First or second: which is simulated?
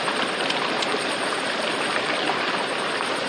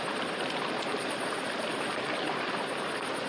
first